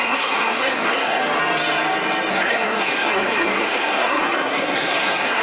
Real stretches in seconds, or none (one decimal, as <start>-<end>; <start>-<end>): 1.2-2.3